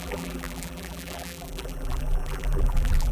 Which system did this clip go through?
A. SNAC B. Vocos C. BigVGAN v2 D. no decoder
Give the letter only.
C